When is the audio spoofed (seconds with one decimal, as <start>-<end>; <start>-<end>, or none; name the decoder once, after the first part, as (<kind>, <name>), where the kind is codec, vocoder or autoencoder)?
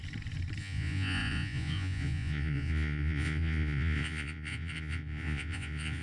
0.6-6.0 (vocoder, Vocos)